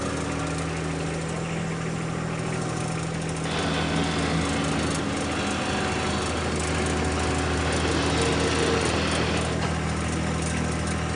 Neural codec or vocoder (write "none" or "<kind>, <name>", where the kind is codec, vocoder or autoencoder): none